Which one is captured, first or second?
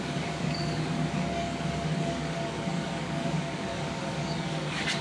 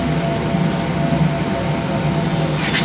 second